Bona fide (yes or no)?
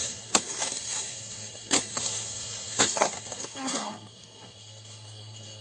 no